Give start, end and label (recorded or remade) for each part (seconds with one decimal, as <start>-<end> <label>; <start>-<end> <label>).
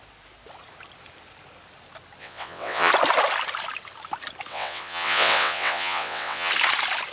0.0-2.2 recorded; 2.2-2.9 remade; 2.9-4.5 recorded; 4.5-6.5 remade; 6.5-7.1 recorded